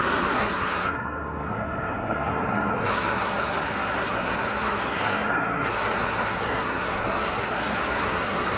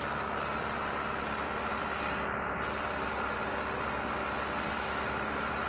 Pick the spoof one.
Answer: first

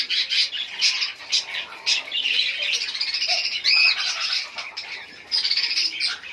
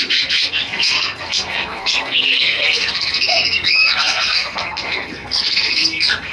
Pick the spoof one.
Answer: second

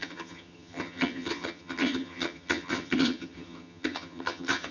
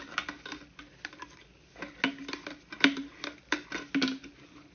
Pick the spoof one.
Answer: first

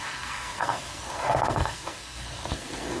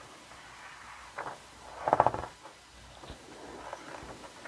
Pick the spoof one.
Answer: first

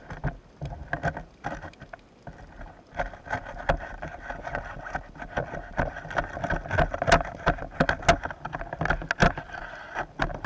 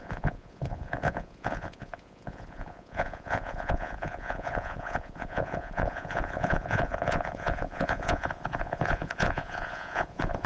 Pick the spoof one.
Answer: second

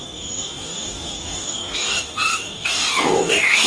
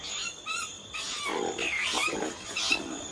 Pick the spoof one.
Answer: first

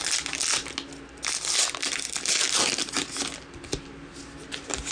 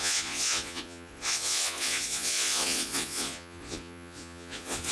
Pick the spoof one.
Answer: second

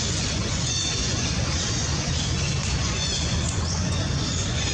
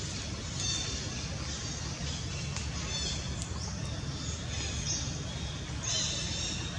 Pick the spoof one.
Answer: first